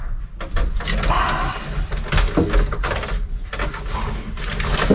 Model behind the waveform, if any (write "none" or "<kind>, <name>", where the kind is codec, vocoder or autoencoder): none